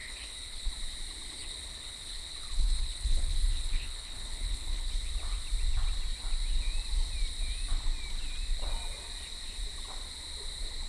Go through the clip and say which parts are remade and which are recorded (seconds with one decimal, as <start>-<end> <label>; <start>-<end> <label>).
0.0-0.7 remade; 0.7-1.4 recorded; 1.4-4.9 remade; 4.9-10.9 recorded